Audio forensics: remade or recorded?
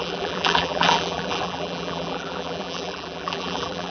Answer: remade